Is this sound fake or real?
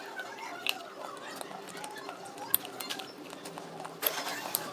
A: real